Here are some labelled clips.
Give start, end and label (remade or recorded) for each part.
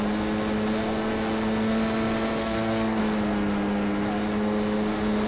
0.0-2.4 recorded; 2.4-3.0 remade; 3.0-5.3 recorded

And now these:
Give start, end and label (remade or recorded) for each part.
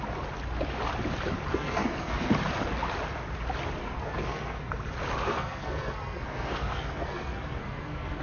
0.0-1.5 recorded; 1.5-2.3 remade; 2.3-3.8 recorded; 3.8-4.7 remade; 4.7-5.3 recorded; 5.3-8.2 remade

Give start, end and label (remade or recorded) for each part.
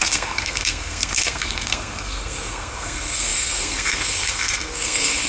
0.0-5.3 remade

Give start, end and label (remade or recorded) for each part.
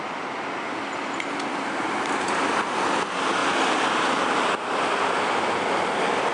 0.0-6.3 recorded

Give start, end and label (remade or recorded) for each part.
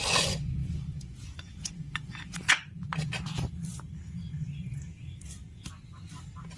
0.0-2.7 remade; 2.7-4.3 recorded; 4.3-4.9 remade; 4.9-6.6 recorded